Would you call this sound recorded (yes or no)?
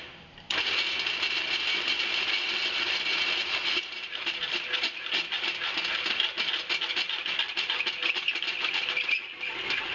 yes